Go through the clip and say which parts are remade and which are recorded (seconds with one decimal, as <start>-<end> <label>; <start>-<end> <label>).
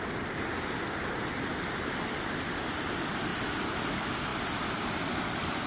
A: 0.0-5.7 recorded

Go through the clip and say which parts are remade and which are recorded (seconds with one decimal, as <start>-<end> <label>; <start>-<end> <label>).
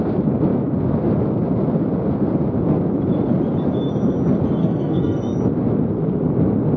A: 0.0-4.6 recorded; 4.6-5.2 remade; 5.2-6.8 recorded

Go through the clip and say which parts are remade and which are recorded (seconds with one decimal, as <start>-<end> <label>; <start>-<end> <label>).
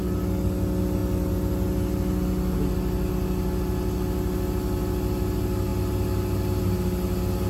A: 0.0-7.5 recorded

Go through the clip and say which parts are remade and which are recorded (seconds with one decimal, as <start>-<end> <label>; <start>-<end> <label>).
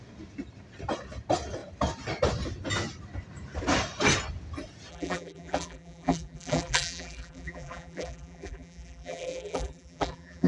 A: 0.0-4.9 recorded; 4.9-10.5 remade